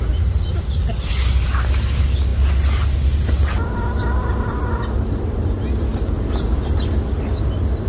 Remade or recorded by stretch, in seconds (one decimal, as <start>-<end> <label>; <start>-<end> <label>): 0.0-7.9 recorded